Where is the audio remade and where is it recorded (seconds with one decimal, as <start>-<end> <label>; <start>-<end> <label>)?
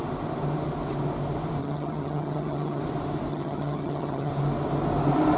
0.0-1.6 recorded; 1.6-2.8 remade; 2.8-3.3 recorded; 3.3-4.3 remade; 4.3-5.4 recorded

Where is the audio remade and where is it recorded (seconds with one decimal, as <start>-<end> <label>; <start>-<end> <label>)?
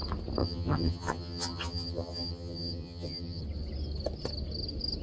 0.0-0.4 recorded; 0.4-3.4 remade; 3.4-5.0 recorded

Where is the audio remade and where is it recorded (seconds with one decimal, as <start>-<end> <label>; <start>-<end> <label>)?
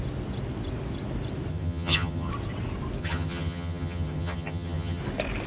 0.0-1.5 recorded; 1.5-2.3 remade; 2.3-3.0 recorded; 3.0-5.0 remade; 5.0-5.5 recorded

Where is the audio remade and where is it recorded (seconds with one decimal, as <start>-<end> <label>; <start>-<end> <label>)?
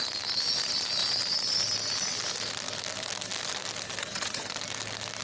0.0-4.0 recorded; 4.0-4.5 remade; 4.5-5.2 recorded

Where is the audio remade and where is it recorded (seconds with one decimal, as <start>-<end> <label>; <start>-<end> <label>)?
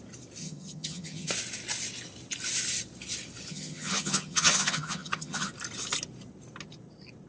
0.0-0.4 recorded; 0.4-1.3 remade; 1.3-3.5 recorded; 3.5-5.5 remade; 5.5-7.3 recorded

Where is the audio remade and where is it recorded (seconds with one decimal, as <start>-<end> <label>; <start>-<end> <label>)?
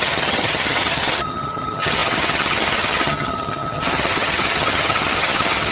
0.0-5.7 remade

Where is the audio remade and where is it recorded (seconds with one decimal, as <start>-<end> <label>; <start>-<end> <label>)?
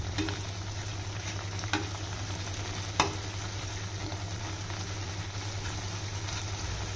0.0-7.0 recorded